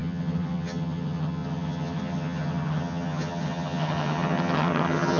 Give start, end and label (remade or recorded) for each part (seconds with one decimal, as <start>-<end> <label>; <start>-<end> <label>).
0.0-5.2 remade